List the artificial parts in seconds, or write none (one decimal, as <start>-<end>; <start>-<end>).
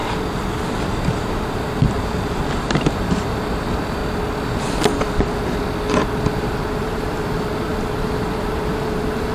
0.6-4.0; 6.8-9.3